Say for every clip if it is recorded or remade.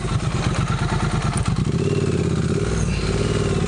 recorded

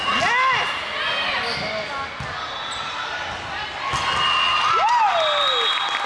recorded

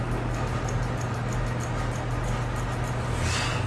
recorded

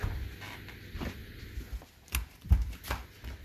recorded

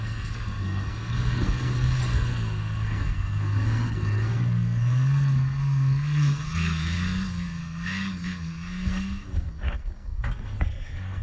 remade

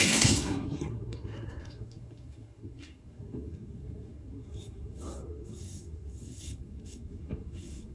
remade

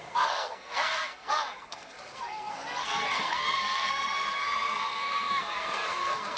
remade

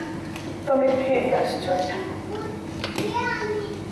recorded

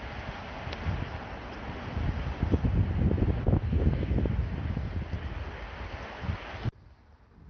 recorded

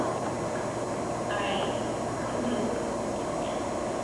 recorded